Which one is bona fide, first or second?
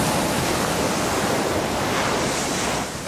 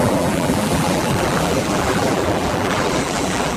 first